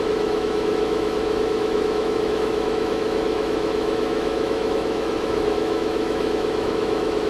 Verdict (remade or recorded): remade